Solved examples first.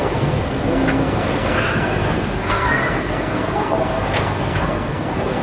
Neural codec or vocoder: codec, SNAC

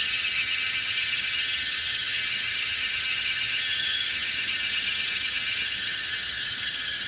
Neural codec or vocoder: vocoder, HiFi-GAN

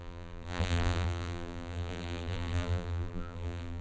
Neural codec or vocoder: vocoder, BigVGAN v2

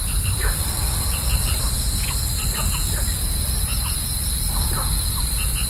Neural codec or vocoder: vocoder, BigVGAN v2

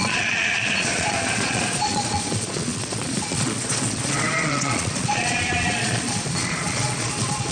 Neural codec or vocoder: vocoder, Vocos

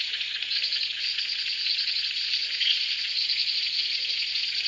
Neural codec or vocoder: vocoder, Vocos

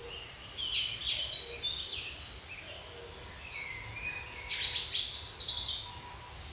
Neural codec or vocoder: none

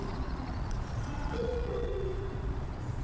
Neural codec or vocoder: vocoder, Vocos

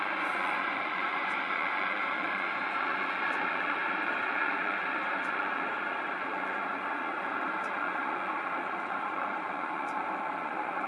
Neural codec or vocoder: vocoder, Vocos